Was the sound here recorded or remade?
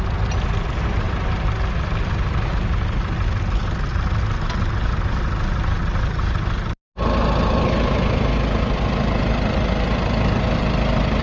recorded